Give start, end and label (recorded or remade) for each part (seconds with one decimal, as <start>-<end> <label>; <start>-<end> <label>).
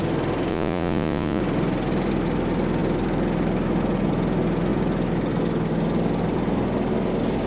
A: 0.0-0.5 recorded; 0.5-1.4 remade; 1.4-7.5 recorded